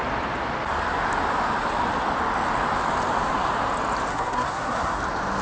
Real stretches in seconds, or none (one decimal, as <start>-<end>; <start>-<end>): 0.0-4.1; 5.0-5.4